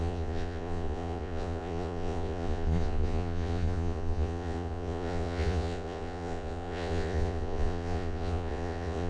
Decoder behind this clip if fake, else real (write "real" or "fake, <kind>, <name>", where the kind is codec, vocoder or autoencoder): fake, vocoder, Vocos